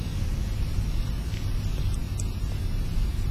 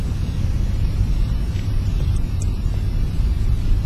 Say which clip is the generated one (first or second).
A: second